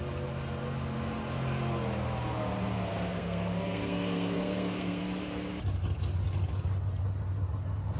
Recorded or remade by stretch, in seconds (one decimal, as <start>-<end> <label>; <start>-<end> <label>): 0.0-2.9 recorded; 2.9-5.0 remade; 5.0-8.0 recorded

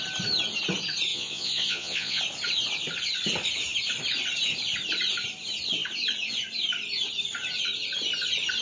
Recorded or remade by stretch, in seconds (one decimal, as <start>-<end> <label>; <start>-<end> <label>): 0.0-1.1 recorded; 1.1-2.2 remade; 2.2-8.6 recorded

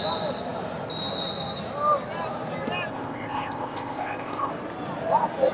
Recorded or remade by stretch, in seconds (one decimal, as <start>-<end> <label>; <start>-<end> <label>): 0.0-2.9 recorded; 2.9-4.5 remade; 4.5-5.5 recorded

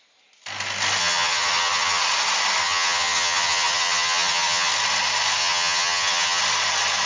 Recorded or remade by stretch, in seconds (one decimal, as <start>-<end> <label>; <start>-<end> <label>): 0.0-1.0 recorded; 1.0-2.0 remade; 2.0-2.6 recorded; 2.6-4.7 remade; 4.7-5.4 recorded; 5.4-6.4 remade; 6.4-7.1 recorded

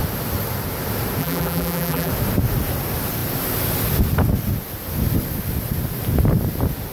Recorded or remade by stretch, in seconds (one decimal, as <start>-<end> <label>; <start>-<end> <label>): 0.0-1.2 recorded; 1.2-2.1 remade; 2.1-6.9 recorded

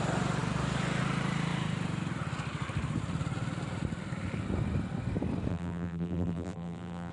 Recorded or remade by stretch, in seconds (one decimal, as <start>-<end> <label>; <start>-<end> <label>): 0.0-5.5 recorded; 5.5-7.1 remade

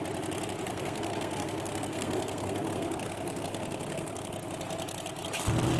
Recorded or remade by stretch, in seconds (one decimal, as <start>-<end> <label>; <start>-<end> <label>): 0.0-0.7 recorded; 0.7-4.2 remade; 4.2-5.8 recorded

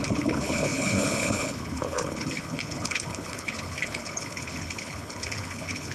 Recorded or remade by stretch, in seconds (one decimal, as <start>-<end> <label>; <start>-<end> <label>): 0.0-5.9 remade